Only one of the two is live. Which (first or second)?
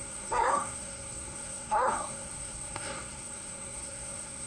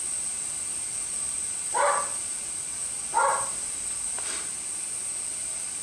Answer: second